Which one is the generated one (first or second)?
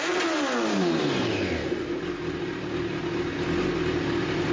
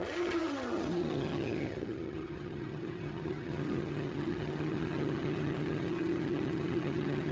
second